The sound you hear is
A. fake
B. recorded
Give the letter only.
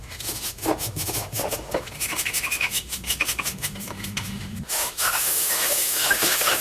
A